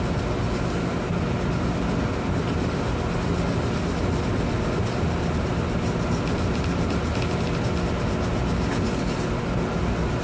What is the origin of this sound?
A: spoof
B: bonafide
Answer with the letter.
B